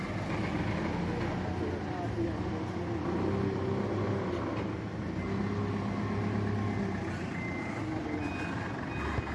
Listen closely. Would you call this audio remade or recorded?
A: recorded